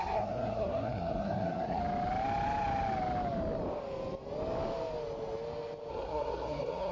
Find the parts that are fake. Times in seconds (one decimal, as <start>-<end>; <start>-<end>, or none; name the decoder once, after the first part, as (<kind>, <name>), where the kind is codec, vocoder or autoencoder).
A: 0.0-1.8 (codec, SNAC); 5.9-6.9

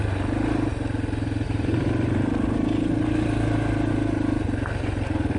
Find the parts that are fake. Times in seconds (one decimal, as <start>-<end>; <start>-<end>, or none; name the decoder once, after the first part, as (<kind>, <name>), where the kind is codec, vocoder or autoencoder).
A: none